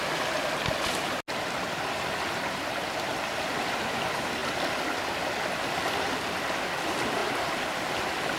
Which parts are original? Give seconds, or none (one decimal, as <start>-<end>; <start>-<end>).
0.0-8.4